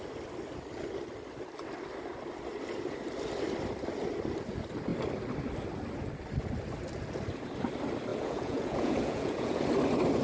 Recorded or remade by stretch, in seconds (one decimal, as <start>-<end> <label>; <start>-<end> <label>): 0.0-8.1 recorded; 8.1-9.6 remade; 9.6-10.2 recorded